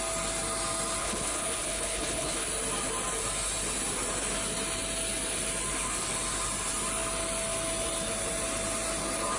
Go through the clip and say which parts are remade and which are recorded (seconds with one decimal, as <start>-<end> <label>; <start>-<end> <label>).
0.0-1.0 recorded; 1.0-2.5 remade; 2.5-9.4 recorded